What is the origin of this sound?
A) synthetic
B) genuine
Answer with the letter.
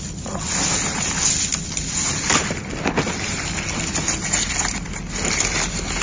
B